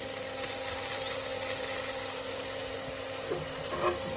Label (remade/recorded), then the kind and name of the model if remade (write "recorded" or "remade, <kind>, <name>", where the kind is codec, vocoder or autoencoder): recorded